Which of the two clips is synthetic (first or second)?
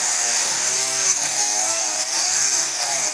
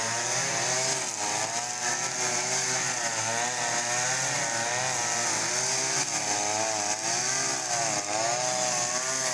first